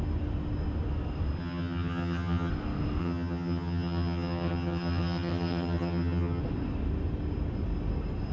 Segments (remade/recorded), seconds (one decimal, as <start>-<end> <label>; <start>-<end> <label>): 0.0-1.4 recorded; 1.4-2.5 remade; 2.5-3.0 recorded; 3.0-6.4 remade; 6.4-8.3 recorded